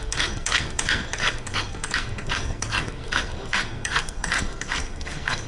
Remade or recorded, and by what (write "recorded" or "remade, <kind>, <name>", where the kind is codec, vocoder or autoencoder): remade, codec, SNAC